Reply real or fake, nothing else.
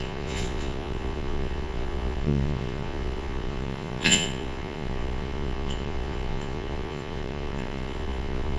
fake